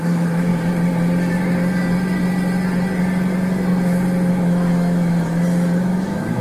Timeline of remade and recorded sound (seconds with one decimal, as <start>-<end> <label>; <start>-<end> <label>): 0.0-0.5 remade; 0.5-4.3 recorded; 4.3-6.4 remade